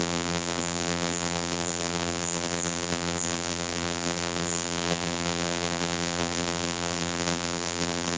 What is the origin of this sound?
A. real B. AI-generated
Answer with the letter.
B